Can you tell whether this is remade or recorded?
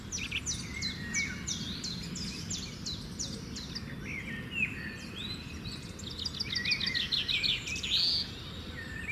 recorded